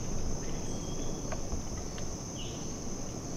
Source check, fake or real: real